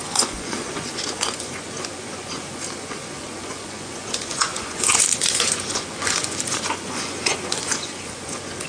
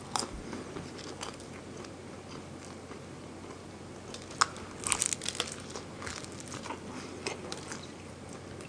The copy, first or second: first